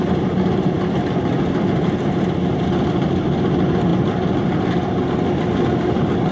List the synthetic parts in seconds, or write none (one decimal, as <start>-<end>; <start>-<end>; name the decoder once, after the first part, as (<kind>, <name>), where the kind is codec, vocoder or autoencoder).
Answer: none